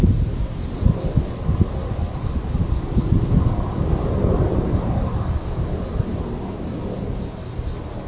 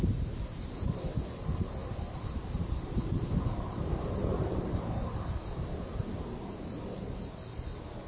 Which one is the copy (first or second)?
second